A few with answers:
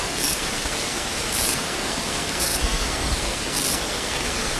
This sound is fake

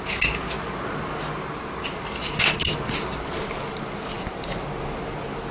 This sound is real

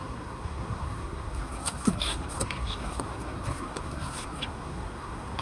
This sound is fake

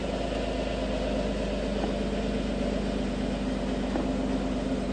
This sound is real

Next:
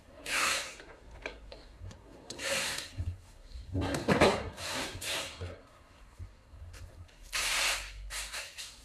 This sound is fake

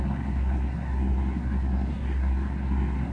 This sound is fake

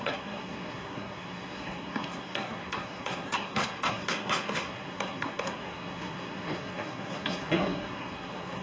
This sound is fake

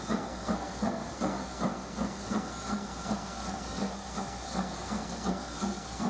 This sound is fake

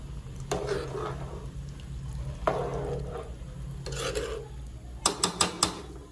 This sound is real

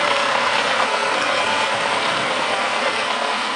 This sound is fake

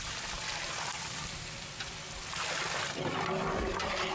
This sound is real